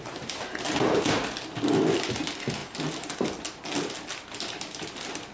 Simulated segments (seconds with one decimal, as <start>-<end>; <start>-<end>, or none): none